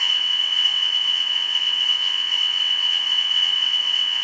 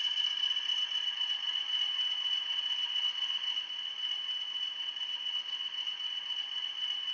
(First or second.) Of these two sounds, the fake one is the first